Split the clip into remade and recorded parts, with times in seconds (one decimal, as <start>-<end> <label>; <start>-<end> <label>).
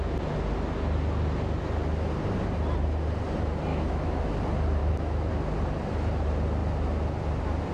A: 0.0-3.7 recorded; 3.7-4.2 remade; 4.2-4.8 recorded; 4.8-5.3 remade; 5.3-7.7 recorded